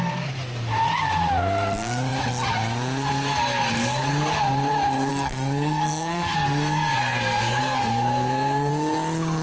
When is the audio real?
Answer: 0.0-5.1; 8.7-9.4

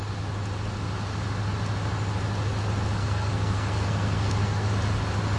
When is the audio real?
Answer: 0.0-3.0; 4.7-5.4